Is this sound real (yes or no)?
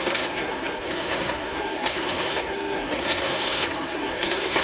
no